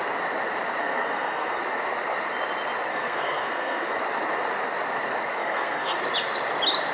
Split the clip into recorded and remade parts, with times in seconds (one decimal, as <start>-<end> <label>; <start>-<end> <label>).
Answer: 0.0-0.8 recorded; 0.8-1.6 remade; 1.6-2.9 recorded; 2.9-4.0 remade; 4.0-5.4 recorded; 5.4-6.0 remade; 6.0-6.9 recorded